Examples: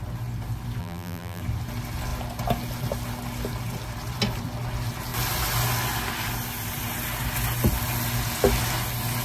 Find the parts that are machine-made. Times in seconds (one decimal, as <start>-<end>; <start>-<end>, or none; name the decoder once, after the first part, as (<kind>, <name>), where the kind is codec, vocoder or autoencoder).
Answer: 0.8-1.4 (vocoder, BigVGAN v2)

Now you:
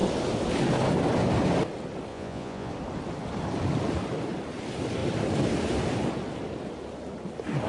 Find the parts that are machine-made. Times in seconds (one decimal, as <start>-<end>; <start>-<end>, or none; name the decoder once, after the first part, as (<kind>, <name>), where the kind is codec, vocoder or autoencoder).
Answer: 2.1-2.7 (vocoder, Vocos)

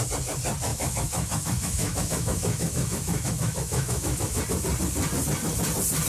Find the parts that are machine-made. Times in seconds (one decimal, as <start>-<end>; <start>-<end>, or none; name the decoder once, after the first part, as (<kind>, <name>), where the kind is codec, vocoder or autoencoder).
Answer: 0.7-4.4 (autoencoder, DAC-VAE)

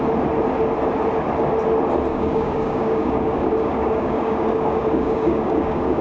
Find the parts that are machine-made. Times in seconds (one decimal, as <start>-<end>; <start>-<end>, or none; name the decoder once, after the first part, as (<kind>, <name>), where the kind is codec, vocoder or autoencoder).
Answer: 2.1-6.0 (codec, DAC)

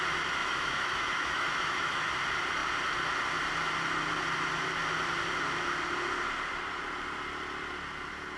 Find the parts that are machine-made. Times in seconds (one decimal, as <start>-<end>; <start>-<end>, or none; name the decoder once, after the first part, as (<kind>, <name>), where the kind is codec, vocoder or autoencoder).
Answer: 0.4-2.1 (autoencoder, DAC-VAE)